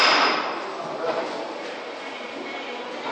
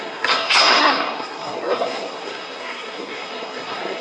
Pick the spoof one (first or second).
second